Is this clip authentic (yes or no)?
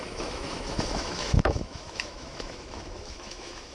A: no